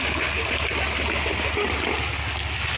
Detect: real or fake real